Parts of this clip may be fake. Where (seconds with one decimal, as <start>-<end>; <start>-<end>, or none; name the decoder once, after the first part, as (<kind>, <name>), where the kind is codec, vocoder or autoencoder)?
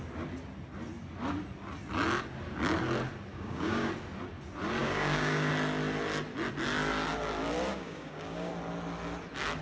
3.3-3.9 (codec, DAC); 4.8-5.5; 7.7-8.5